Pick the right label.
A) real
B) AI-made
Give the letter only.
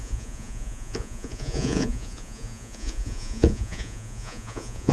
B